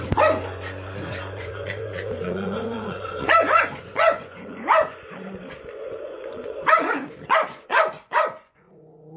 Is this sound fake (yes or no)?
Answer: yes